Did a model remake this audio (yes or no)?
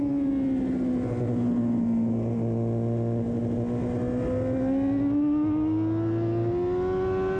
no